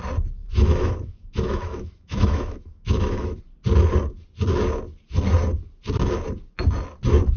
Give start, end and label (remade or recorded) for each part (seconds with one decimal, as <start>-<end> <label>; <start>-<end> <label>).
0.0-0.4 recorded; 0.4-3.4 remade; 3.4-7.4 recorded